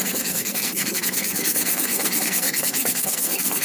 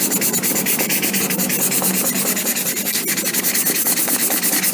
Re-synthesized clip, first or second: first